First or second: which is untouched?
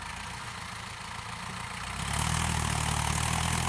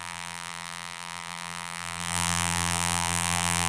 first